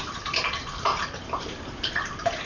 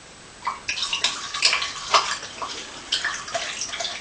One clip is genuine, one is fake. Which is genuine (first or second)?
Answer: second